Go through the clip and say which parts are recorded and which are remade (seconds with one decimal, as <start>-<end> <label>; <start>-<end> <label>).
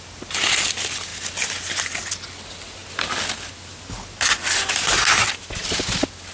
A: 0.0-6.3 recorded